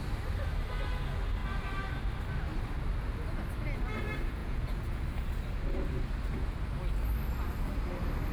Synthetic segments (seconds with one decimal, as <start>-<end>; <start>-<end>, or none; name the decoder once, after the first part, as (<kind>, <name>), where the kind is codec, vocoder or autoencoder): 4.4-5.0 (vocoder, Vocos)